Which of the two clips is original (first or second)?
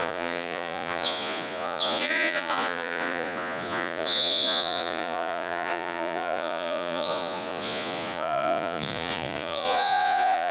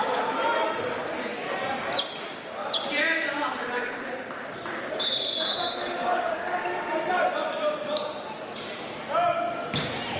second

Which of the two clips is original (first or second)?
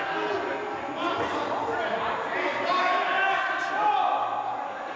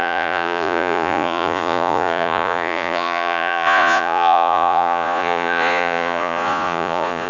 first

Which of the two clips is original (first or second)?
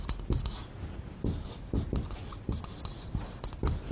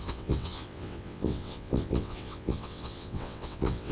first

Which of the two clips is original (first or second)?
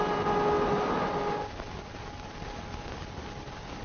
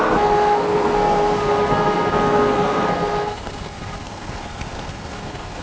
first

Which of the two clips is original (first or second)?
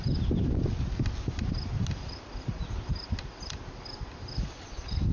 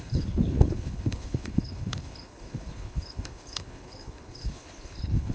first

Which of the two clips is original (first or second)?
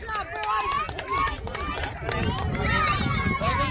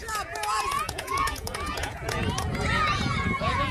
first